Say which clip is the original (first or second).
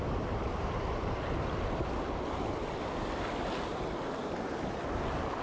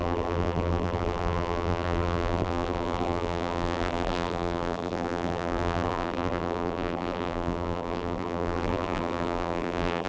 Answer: first